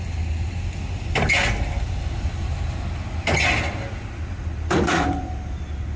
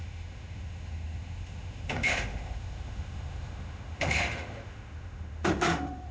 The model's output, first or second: second